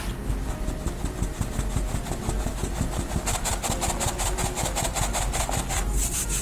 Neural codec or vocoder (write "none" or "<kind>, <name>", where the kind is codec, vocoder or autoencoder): none